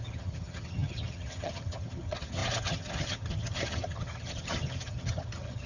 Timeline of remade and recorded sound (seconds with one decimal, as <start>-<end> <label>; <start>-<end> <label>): 0.0-5.7 remade